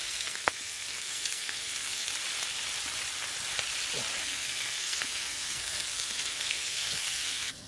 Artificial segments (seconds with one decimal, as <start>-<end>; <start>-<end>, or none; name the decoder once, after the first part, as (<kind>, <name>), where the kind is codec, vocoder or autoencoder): 0.0-2.1 (codec, SNAC); 4.2-7.7